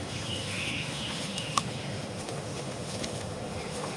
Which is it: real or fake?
fake